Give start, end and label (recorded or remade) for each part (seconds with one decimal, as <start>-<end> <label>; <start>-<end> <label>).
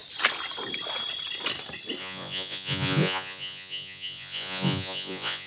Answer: 0.0-2.0 recorded; 2.0-5.5 remade